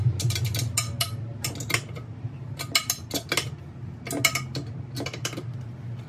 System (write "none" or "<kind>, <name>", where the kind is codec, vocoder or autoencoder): none